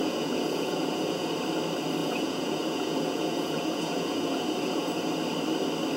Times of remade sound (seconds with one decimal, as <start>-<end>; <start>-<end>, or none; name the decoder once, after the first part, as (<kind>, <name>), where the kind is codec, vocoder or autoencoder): 0.0-1.3 (vocoder, Vocos); 2.0-5.1